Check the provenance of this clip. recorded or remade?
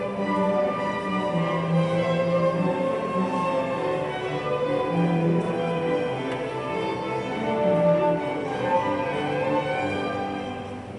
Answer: recorded